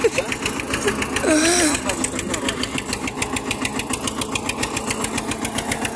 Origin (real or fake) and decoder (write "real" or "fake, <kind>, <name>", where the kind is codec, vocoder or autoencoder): real